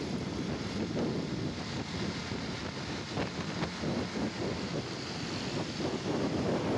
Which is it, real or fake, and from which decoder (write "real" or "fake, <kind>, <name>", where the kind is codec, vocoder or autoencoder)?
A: real